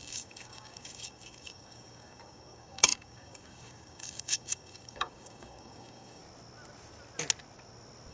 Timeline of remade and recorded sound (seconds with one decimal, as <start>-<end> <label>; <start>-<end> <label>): 0.0-6.2 remade; 6.2-8.1 recorded

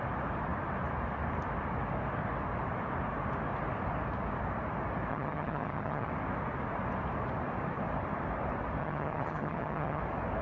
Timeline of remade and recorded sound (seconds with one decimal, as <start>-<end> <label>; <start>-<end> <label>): 0.0-5.1 recorded; 5.1-6.1 remade; 6.1-8.8 recorded; 8.8-10.0 remade; 10.0-10.4 recorded

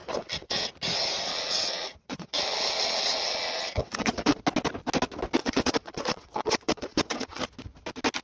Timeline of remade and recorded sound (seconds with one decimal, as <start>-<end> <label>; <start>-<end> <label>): 0.0-0.7 remade; 0.7-1.3 recorded; 1.3-4.4 remade; 4.4-5.4 recorded; 5.4-7.4 remade; 7.4-8.2 recorded

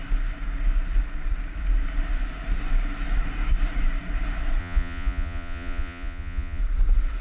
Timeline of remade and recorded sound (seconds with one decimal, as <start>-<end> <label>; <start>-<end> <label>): 0.0-4.6 recorded; 4.6-6.6 remade; 6.6-7.2 recorded

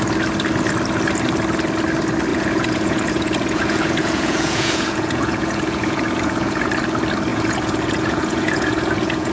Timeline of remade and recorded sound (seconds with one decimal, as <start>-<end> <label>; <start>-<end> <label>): 0.0-2.3 recorded; 2.3-6.7 remade; 6.7-7.3 recorded; 7.3-9.3 remade

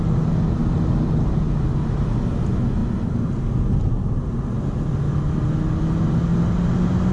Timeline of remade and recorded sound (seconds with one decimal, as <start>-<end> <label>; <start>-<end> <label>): 0.0-7.1 recorded